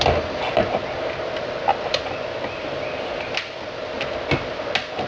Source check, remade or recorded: recorded